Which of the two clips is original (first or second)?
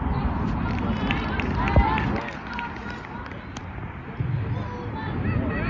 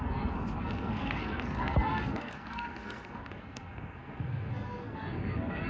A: first